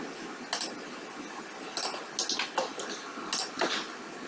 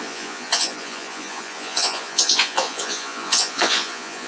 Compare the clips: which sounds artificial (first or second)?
second